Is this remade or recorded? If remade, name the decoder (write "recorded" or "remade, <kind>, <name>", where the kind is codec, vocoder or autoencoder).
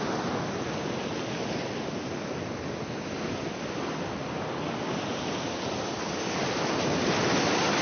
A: recorded